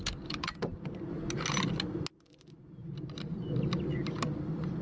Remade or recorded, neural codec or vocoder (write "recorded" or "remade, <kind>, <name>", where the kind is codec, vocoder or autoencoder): recorded